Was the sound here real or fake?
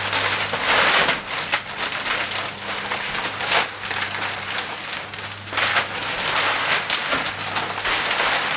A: real